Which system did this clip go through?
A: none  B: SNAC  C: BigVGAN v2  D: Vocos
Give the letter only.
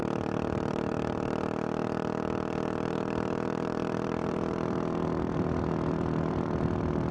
C